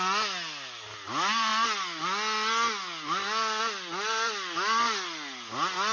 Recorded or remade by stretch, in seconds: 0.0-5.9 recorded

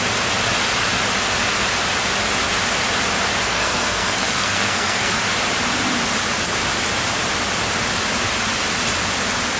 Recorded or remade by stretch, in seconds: 0.0-3.4 recorded; 3.4-5.2 remade; 5.2-9.6 recorded

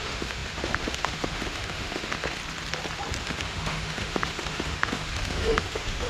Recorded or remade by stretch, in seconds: 0.0-2.4 remade; 2.4-3.2 recorded; 3.2-6.1 remade

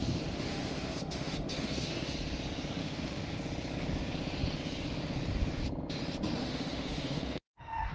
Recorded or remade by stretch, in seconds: 0.0-2.1 remade; 2.1-2.8 recorded; 2.8-3.3 remade; 3.3-6.4 recorded; 6.4-7.9 remade

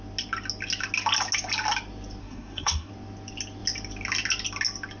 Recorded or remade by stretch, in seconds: 0.0-2.2 recorded; 2.2-2.9 remade; 2.9-5.0 recorded

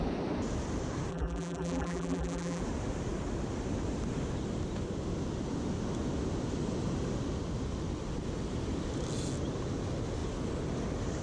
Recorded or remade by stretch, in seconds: 0.0-1.1 recorded; 1.1-2.6 remade; 2.6-11.2 recorded

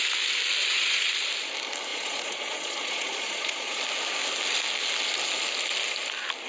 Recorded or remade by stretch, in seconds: 0.0-0.6 recorded; 0.6-1.1 remade; 1.1-1.9 recorded; 1.9-3.8 remade; 3.8-6.5 recorded

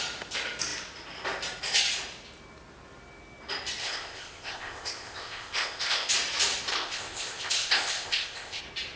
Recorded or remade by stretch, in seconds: 0.0-3.8 recorded; 3.8-6.1 remade; 6.1-6.7 recorded; 6.7-8.6 remade; 8.6-9.0 recorded